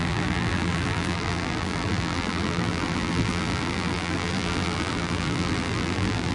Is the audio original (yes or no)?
no